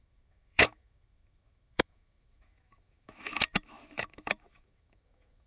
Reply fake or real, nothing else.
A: fake